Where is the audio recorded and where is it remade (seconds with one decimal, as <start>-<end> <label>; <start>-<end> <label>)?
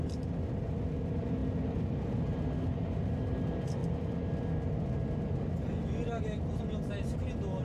0.0-7.6 recorded